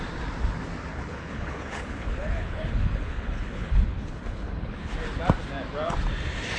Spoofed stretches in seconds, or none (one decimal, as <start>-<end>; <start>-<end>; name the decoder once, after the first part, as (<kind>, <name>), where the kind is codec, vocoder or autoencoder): 0.9-4.9 (codec, HILCodec)